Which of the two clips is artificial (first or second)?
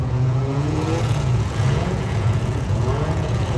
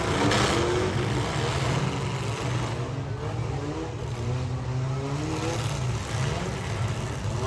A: first